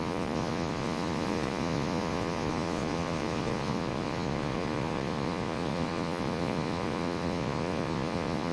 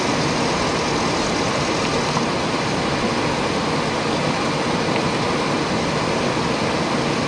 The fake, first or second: first